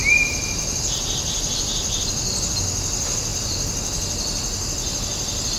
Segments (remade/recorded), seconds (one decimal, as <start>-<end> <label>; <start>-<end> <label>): 0.0-2.1 remade; 2.1-5.6 recorded